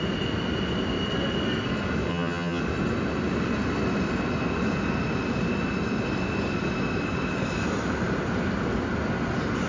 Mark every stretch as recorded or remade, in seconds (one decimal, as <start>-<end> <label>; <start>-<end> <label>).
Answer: 0.0-2.1 recorded; 2.1-2.6 remade; 2.6-9.7 recorded